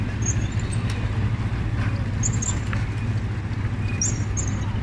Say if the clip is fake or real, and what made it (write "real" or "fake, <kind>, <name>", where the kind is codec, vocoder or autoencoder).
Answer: real